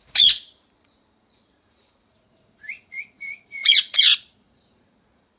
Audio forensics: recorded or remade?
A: remade